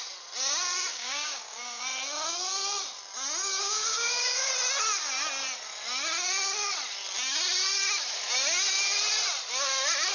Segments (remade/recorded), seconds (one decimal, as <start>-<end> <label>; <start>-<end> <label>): 0.0-0.9 recorded; 0.9-1.8 remade; 1.8-3.5 recorded; 3.5-4.5 remade; 4.5-10.1 recorded